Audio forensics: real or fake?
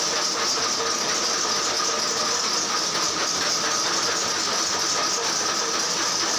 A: real